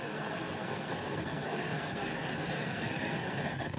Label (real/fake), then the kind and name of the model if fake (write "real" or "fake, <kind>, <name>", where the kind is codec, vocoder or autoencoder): fake, codec, SNAC